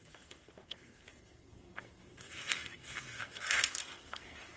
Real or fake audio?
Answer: fake